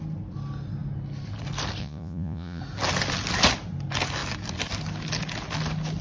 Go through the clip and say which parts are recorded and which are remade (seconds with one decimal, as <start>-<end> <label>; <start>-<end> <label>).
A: 0.0-1.8 recorded; 1.8-2.6 remade; 2.6-6.0 recorded